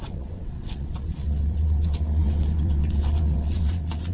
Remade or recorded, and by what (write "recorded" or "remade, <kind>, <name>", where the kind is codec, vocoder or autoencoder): remade, vocoder, WaveNeXt